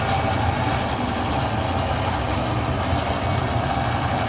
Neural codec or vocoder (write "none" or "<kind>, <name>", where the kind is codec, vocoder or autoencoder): none